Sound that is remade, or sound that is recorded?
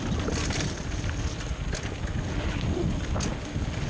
recorded